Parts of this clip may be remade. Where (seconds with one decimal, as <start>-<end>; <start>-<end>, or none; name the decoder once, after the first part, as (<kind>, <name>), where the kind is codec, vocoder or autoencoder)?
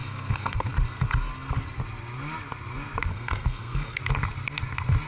0.0-0.7 (codec, SNAC); 3.1-4.0